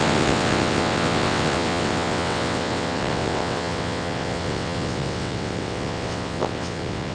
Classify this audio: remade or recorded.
remade